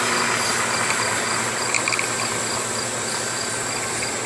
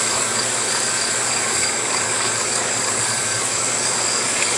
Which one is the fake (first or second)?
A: second